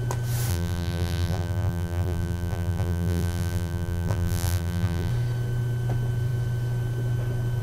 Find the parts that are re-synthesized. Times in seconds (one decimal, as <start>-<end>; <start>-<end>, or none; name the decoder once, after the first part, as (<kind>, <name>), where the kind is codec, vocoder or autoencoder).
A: 0.5-5.1 (vocoder, BigVGAN v2)